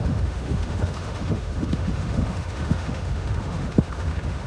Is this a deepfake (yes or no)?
yes